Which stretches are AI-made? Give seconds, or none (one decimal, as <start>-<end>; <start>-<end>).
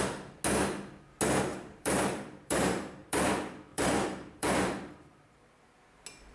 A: 1.5-3.3; 3.7-5.6